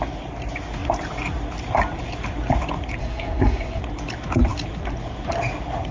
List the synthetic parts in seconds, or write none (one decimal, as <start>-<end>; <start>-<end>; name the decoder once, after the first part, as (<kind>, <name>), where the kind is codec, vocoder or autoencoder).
3.0-3.8 (codec, SNAC)